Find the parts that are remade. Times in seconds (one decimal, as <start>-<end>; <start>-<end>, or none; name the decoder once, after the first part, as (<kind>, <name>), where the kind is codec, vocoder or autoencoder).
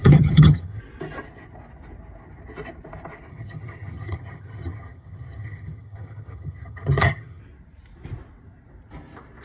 0.0-0.8 (vocoder, HiFi-GAN); 3.3-7.4